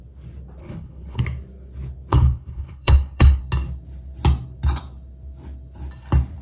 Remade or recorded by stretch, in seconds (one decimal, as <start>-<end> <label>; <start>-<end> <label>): 0.0-0.6 recorded; 0.6-1.2 remade; 1.2-2.1 recorded; 2.1-3.4 remade; 3.4-6.4 recorded